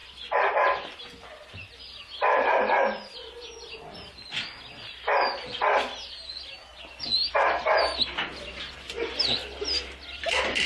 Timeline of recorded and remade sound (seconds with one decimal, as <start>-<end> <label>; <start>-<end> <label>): 0.0-10.7 recorded